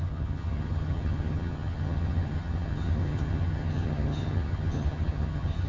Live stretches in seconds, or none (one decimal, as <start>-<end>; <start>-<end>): none